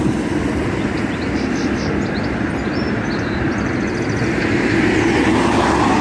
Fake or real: real